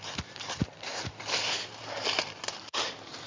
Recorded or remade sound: remade